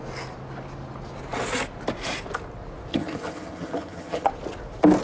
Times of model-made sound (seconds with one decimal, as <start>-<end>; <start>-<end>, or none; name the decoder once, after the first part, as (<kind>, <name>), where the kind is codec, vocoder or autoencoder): 2.9-4.3 (vocoder, HiFi-GAN)